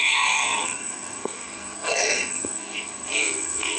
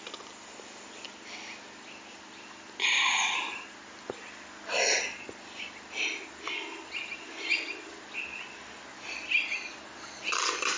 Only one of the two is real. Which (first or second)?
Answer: second